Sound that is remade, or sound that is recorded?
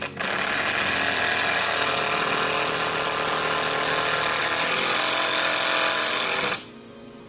recorded